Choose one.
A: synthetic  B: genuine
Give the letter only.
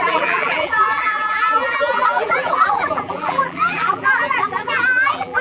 A